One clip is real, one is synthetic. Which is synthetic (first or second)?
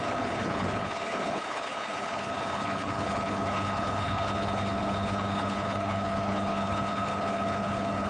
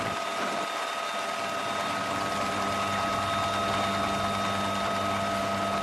first